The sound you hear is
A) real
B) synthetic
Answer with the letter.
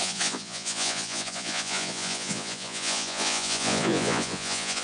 B